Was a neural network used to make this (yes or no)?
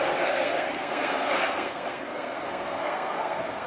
yes